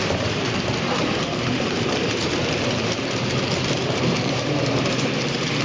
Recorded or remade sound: remade